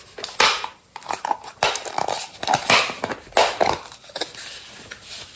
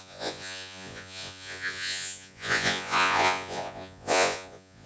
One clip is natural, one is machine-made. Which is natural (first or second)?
first